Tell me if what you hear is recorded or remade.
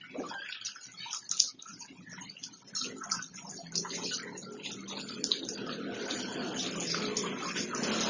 recorded